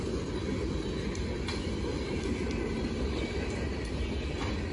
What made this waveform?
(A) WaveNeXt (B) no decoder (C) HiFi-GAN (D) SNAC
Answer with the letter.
B